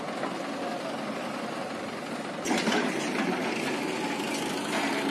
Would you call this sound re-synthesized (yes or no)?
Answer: no